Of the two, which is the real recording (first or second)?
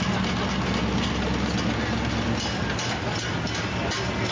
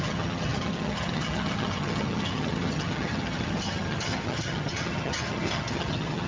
first